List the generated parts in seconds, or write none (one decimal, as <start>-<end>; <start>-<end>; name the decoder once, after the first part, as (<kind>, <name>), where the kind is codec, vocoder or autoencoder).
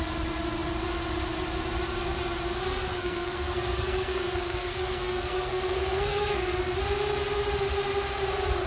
2.9-6.6 (codec, SNAC)